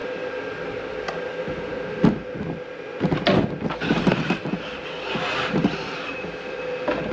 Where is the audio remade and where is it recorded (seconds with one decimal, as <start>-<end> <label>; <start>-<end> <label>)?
0.0-7.1 recorded